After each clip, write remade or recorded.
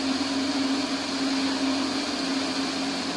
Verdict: recorded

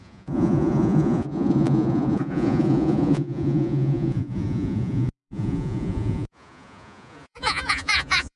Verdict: remade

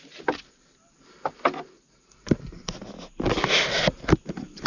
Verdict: recorded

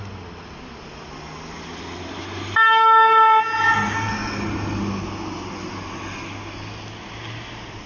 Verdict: recorded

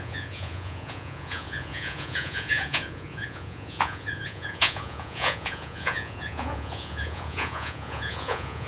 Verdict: remade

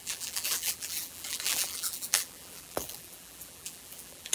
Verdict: remade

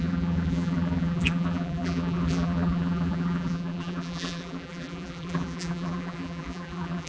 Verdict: remade